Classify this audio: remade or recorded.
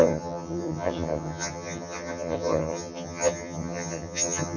remade